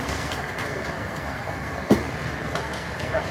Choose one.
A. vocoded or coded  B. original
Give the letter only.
A